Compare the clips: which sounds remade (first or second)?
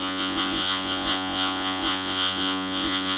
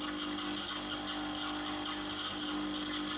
first